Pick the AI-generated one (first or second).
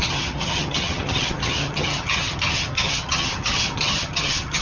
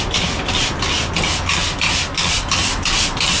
first